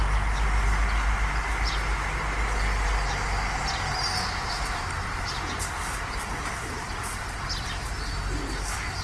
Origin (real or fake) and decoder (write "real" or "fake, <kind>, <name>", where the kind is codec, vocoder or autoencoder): real